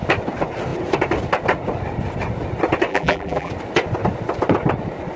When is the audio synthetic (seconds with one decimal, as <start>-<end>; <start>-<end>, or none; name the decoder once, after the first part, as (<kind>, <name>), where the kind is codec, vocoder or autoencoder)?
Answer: 2.9-3.5 (vocoder, BigVGAN v2)